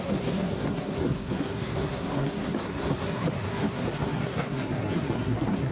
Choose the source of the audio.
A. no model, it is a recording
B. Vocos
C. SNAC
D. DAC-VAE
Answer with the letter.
C